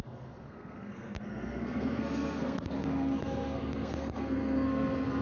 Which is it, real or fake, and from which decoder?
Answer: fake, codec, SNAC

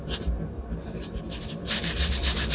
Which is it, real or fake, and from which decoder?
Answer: fake, vocoder, BigVGAN v2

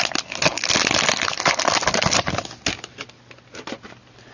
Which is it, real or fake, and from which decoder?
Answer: real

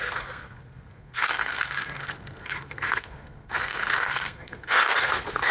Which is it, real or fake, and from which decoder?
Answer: fake, codec, SNAC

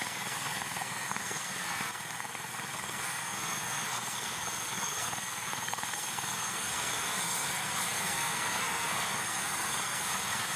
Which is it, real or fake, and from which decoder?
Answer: fake, codec, SNAC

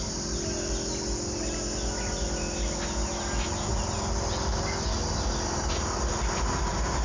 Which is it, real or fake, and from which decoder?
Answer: real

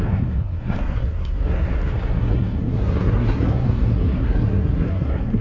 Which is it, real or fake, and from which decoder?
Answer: fake, codec, SNAC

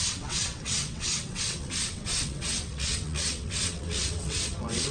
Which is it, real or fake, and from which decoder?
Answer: fake, vocoder, WaveNeXt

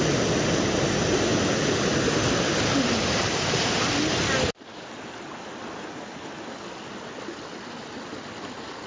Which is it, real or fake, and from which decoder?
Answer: real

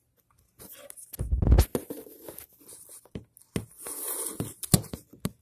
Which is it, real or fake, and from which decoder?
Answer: real